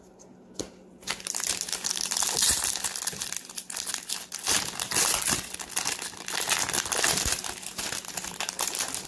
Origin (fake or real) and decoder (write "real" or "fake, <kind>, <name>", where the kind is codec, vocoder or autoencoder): real